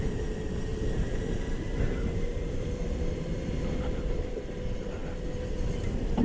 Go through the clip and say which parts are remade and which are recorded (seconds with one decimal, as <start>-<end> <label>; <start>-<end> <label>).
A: 0.0-0.7 recorded; 0.7-4.4 remade; 4.4-6.2 recorded